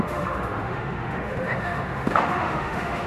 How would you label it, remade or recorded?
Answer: remade